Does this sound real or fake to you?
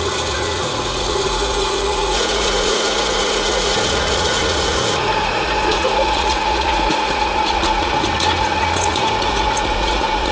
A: fake